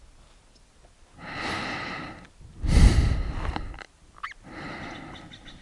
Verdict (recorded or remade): recorded